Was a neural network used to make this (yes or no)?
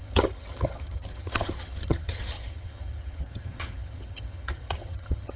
yes